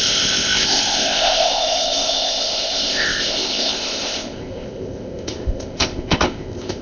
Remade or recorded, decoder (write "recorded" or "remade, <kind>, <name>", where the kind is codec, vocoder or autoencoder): remade, codec, ZipCodec